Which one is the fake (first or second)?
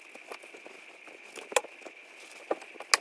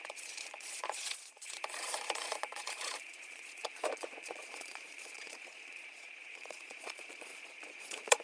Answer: second